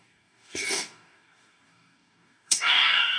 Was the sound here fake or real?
fake